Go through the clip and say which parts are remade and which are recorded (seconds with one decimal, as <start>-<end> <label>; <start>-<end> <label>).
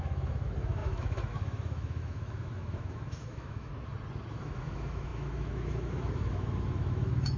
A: 0.0-3.7 remade; 3.7-4.3 recorded; 4.3-7.4 remade